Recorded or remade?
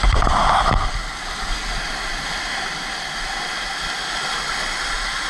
recorded